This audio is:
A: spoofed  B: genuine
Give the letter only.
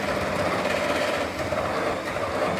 A